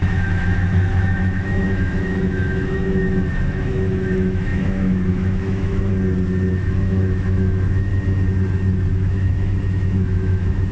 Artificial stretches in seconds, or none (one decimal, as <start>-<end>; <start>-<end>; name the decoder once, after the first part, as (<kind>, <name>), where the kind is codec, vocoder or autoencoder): 0.0-5.9 (autoencoder, DAC-VAE); 6.5-7.9; 8.9-10.7